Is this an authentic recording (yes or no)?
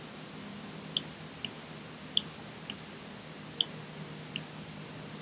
yes